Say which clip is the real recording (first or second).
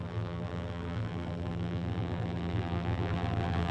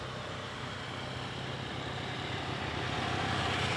second